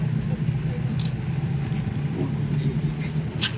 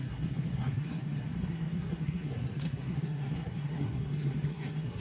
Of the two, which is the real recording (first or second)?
first